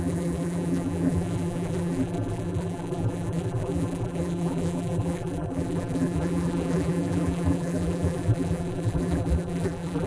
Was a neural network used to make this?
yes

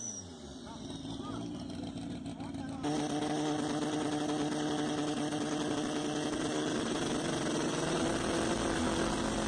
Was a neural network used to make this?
no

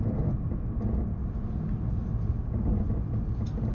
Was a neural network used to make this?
no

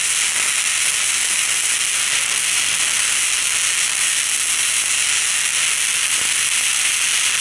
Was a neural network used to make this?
no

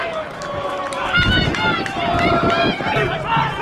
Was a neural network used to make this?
no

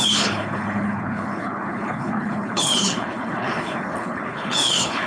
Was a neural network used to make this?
yes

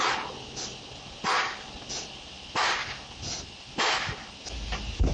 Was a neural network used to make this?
no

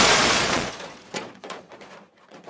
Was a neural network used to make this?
yes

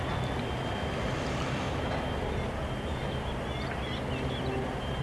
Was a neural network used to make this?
no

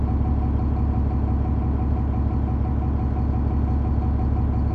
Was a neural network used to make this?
no